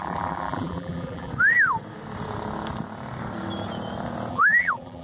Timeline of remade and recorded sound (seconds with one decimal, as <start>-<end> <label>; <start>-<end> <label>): 0.0-1.3 remade; 1.3-4.3 recorded; 4.3-5.0 remade